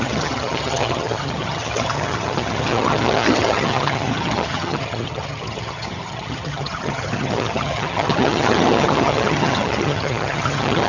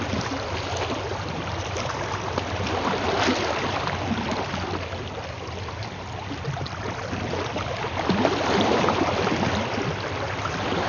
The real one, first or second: second